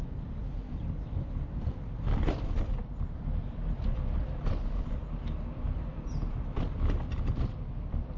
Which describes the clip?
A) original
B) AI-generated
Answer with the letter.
B